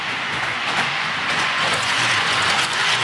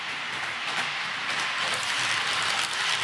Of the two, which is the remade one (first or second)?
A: first